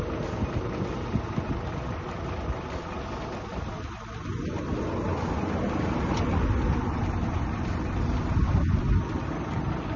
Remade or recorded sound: recorded